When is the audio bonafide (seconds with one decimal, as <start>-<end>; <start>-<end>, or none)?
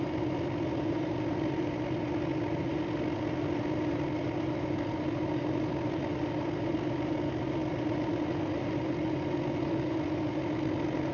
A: 0.0-11.1